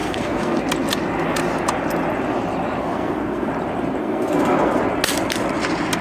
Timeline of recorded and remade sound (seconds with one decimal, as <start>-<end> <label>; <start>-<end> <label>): 0.0-0.6 remade; 0.6-2.8 recorded; 2.8-3.5 remade; 3.5-4.0 recorded; 4.0-4.8 remade; 4.8-6.0 recorded